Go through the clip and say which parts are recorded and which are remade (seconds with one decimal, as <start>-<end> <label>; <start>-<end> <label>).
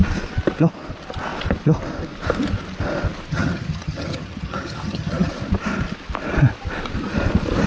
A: 0.0-3.3 recorded; 3.3-5.3 remade; 5.3-7.7 recorded